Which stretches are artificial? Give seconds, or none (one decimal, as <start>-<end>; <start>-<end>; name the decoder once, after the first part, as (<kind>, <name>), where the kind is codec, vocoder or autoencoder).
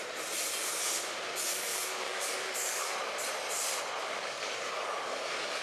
1.7-3.0 (codec, DAC); 4.0-5.6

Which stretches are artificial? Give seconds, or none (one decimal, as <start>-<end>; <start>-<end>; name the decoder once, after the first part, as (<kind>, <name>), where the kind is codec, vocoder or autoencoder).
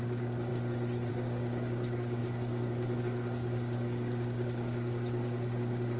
0.0-0.5 (codec, DAC); 1.1-6.0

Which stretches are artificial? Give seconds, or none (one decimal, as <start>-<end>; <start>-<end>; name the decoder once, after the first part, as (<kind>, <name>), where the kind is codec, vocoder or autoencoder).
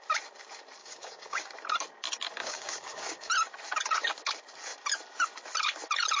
0.8-1.5 (codec, DAC); 2.4-3.3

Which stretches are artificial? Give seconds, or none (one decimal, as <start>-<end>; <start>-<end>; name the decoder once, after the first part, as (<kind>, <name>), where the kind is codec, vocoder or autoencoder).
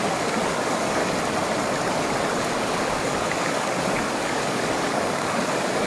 0.0-1.0 (codec, DAC); 2.4-5.9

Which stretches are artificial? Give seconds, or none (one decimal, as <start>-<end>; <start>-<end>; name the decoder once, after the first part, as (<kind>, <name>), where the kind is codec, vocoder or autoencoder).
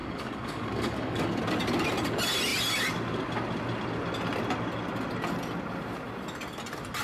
0.0-1.4 (codec, DAC)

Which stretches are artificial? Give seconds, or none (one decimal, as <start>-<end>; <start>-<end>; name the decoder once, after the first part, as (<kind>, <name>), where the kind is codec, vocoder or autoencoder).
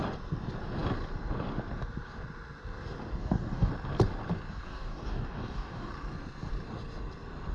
3.2-3.7 (codec, DAC); 4.5-5.9